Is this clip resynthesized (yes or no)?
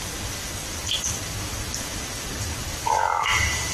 no